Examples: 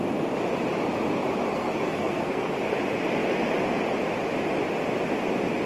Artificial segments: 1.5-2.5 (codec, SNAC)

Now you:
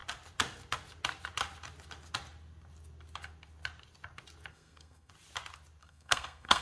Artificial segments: 4.5-5.1 (codec, SNAC); 5.8-6.6